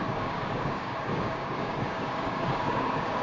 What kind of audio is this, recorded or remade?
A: remade